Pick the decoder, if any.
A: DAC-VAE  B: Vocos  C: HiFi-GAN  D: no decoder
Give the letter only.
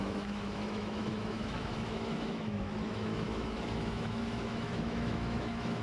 A